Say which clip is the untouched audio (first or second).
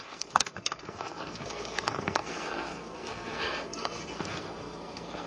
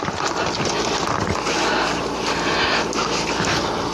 second